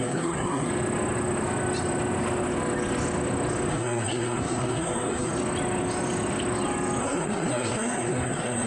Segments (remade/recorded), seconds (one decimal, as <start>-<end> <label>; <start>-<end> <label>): 0.0-0.7 remade; 0.7-3.7 recorded; 3.7-5.3 remade; 5.3-7.0 recorded; 7.0-8.7 remade